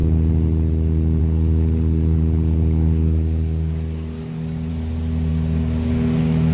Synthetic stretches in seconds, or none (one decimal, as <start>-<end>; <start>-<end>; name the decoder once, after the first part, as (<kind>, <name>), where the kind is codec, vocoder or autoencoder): 1.2-4.7 (codec, DAC); 5.3-6.5